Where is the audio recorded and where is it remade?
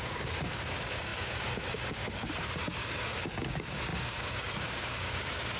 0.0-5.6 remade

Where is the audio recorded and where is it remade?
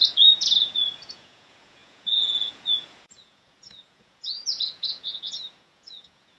0.0-6.4 remade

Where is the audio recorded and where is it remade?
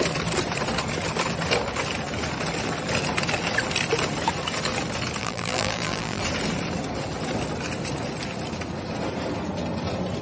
0.0-5.2 recorded; 5.2-6.2 remade; 6.2-10.2 recorded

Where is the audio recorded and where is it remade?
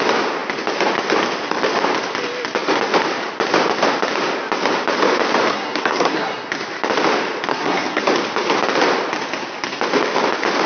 0.0-5.5 recorded; 5.5-6.5 remade; 6.5-7.5 recorded; 7.5-8.0 remade; 8.0-10.7 recorded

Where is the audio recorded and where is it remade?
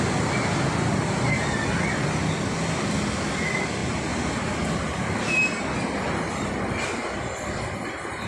0.0-8.3 recorded